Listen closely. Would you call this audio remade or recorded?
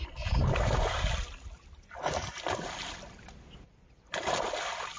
recorded